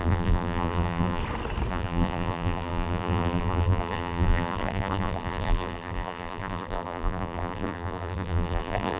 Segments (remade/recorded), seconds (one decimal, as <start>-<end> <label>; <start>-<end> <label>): 0.0-1.2 remade; 1.2-1.7 recorded; 1.7-9.0 remade

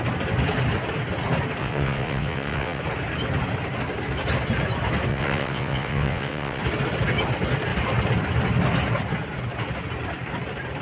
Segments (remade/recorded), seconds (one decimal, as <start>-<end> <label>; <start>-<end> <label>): 0.0-1.6 recorded; 1.6-2.8 remade; 2.8-5.1 recorded; 5.1-6.6 remade; 6.6-10.8 recorded

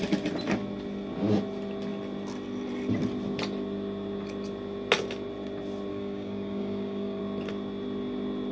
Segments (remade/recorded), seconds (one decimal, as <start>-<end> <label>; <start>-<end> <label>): 0.0-5.9 recorded; 5.9-7.2 remade; 7.2-8.5 recorded

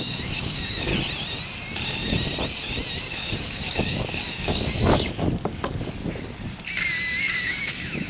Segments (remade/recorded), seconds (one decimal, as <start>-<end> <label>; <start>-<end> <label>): 0.0-0.9 remade; 0.9-3.0 recorded; 3.0-6.0 remade; 6.0-7.2 recorded; 7.2-8.1 remade

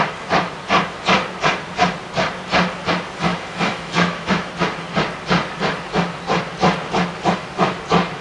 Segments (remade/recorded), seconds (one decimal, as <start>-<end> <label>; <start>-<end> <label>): 0.0-3.3 recorded; 3.3-4.5 remade; 4.5-8.2 recorded